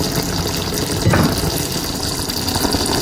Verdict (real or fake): real